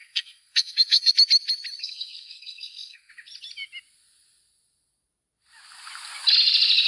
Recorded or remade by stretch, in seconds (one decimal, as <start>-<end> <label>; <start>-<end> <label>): 0.0-1.1 remade; 1.1-1.8 recorded; 1.8-3.1 remade; 3.1-6.9 recorded